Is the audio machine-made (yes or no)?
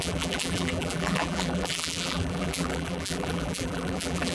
yes